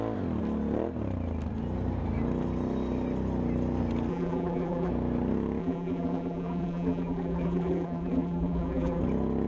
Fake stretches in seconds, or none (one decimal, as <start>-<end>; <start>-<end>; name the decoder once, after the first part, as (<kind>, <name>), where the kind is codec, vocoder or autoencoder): 4.1-4.9 (vocoder, BigVGAN v2); 5.6-9.0